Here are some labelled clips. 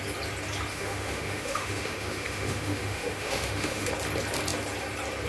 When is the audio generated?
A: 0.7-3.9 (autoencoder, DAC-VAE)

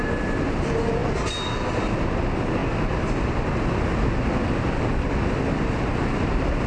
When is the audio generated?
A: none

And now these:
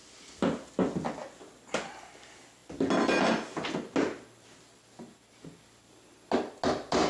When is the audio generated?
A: none